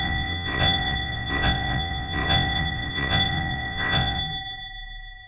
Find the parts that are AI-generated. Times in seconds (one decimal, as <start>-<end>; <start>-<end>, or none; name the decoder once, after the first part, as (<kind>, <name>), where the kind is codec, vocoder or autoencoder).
0.0-4.2 (vocoder, WaveNeXt)